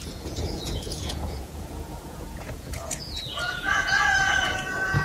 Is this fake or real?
fake